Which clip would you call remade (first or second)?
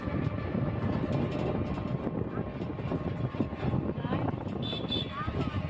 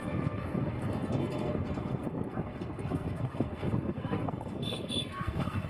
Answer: second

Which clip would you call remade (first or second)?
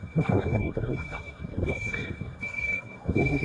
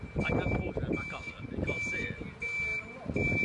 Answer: first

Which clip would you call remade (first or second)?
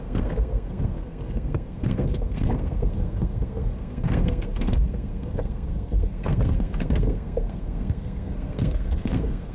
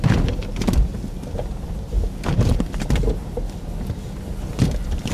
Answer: first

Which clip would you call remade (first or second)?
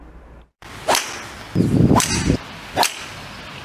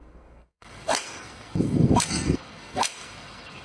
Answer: second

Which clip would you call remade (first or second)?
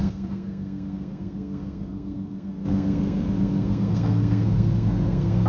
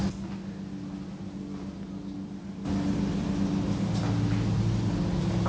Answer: first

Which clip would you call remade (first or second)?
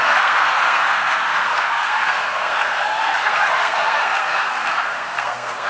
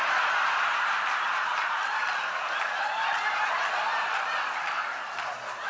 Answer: first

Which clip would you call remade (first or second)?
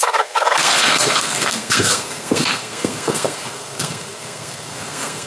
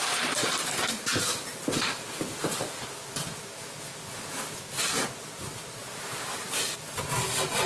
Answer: first